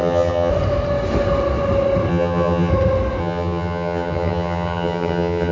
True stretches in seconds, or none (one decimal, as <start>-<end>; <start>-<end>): 0.5-2.1; 2.7-3.2